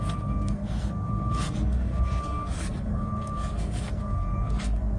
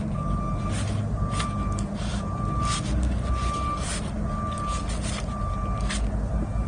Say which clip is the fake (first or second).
first